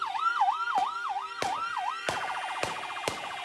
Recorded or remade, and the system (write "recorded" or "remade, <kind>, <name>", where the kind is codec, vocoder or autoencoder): recorded